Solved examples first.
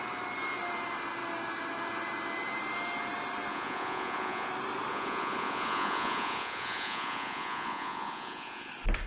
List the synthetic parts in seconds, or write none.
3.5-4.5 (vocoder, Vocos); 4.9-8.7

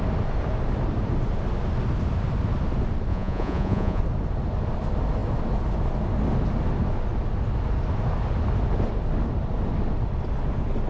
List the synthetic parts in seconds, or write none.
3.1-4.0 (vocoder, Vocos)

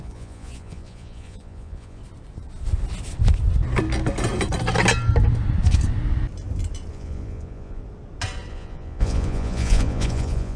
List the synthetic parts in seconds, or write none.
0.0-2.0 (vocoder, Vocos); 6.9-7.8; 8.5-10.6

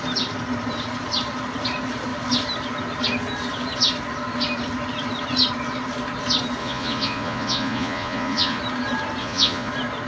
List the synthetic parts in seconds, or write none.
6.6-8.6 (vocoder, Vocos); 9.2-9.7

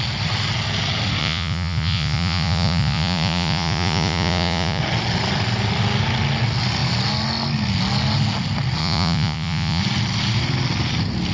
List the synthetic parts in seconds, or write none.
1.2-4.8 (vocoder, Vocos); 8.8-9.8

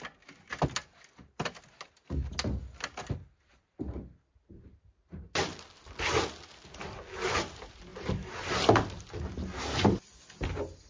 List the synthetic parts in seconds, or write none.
none